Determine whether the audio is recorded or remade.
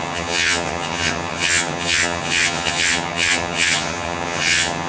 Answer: remade